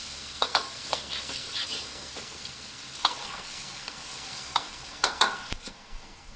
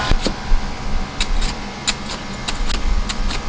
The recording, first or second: second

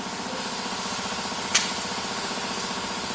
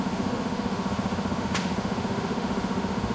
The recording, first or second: first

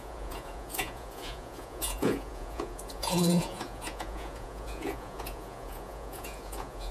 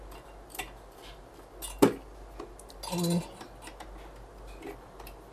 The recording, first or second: second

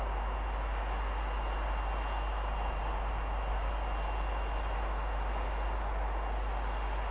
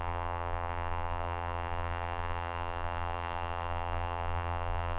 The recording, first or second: first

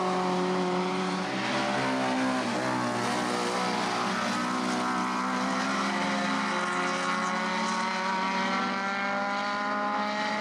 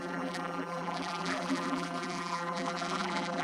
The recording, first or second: first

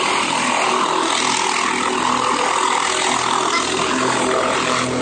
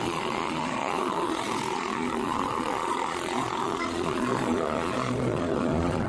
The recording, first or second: first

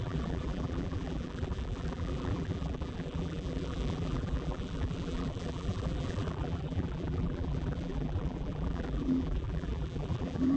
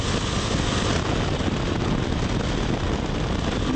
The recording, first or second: second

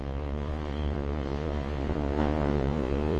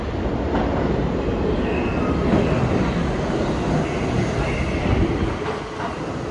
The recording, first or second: second